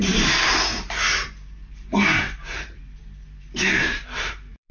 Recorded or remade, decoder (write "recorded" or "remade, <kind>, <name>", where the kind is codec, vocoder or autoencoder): remade, vocoder, BigVGAN v2